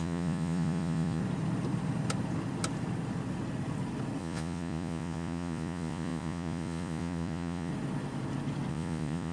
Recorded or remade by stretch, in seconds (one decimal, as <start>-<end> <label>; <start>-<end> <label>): 0.0-1.2 remade; 1.2-4.2 recorded; 4.2-7.7 remade; 7.7-8.7 recorded; 8.7-9.3 remade

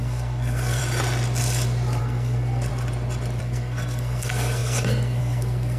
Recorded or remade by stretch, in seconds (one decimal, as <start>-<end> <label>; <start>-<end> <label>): 0.0-0.8 remade; 0.8-2.0 recorded; 2.0-2.7 remade; 2.7-3.4 recorded; 3.4-5.8 remade